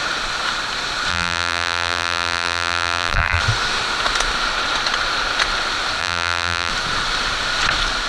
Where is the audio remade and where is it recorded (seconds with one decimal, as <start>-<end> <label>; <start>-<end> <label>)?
0.0-1.1 recorded; 1.1-3.4 remade; 3.4-6.0 recorded; 6.0-6.7 remade; 6.7-8.1 recorded